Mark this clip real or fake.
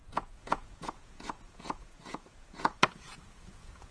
fake